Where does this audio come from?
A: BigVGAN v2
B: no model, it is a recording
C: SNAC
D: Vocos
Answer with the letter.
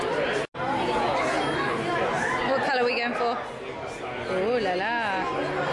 B